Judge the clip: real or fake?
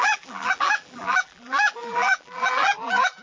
fake